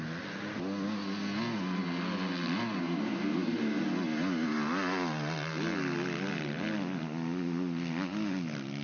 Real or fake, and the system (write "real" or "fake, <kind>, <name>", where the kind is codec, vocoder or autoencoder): real